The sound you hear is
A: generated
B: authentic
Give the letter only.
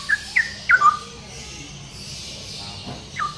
B